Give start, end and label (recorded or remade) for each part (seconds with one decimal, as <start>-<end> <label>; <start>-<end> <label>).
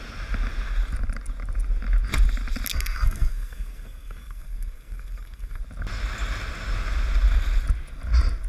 0.0-2.7 recorded; 2.7-5.6 remade; 5.6-8.5 recorded